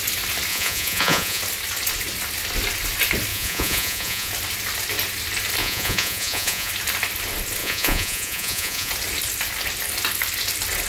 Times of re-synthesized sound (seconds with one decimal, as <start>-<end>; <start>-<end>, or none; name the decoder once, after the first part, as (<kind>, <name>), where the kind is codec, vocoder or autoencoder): 0.5-1.4 (vocoder, Vocos); 3.3-4.3; 5.6-6.7; 7.6-8.9